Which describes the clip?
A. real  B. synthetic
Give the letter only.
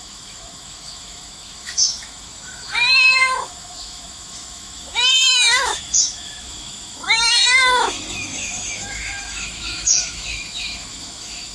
B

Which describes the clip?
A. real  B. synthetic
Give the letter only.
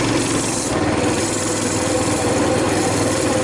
B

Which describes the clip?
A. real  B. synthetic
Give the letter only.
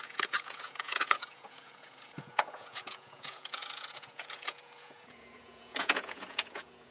B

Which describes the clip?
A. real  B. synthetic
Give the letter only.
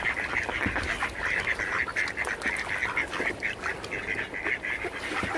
A